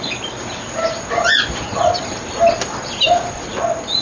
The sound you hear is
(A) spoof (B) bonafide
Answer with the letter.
B